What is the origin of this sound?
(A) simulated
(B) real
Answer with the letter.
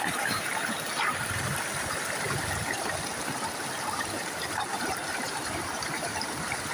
A